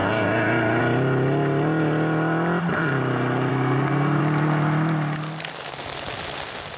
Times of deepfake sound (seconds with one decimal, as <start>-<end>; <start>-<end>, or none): 3.5-4.2